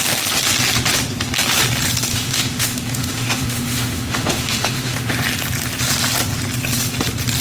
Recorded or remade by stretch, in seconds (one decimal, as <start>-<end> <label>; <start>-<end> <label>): 0.0-2.1 recorded; 2.1-5.1 remade; 5.1-7.4 recorded